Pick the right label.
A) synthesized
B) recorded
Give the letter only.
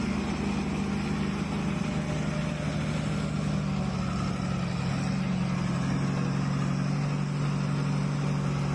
B